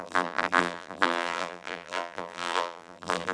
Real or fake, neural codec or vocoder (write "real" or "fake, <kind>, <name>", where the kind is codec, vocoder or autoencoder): fake, vocoder, BigVGAN v2